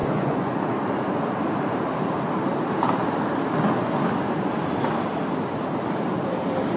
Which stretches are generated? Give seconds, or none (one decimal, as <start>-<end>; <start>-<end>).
0.0-0.5